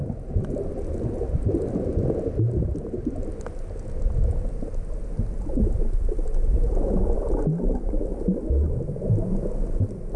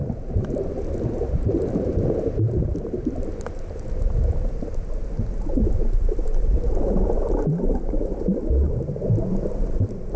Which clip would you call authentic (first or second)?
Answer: first